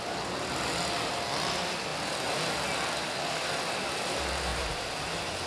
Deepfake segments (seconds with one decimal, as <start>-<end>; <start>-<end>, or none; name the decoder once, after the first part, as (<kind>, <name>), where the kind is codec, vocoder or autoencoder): 4.5-5.5 (vocoder, BigVGAN v2)